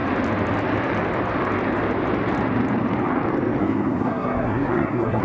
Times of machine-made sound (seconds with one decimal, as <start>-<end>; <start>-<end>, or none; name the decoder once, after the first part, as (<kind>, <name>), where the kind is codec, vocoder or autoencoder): 3.6-5.2 (codec, SNAC)